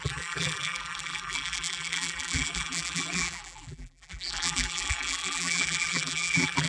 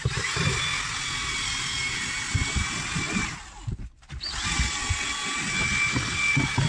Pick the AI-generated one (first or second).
first